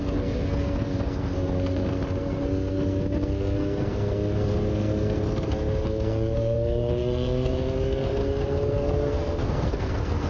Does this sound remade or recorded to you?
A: remade